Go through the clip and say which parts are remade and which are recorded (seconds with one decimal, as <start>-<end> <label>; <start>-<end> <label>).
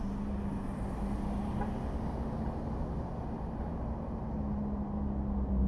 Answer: 0.0-5.7 recorded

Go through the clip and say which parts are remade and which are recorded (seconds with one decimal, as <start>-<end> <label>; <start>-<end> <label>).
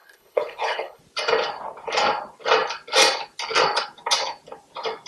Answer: 0.0-1.0 remade; 1.0-5.1 recorded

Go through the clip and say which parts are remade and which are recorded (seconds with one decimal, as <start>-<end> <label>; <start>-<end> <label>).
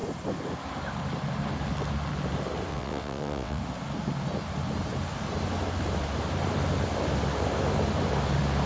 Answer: 0.0-2.7 recorded; 2.7-3.6 remade; 3.6-8.7 recorded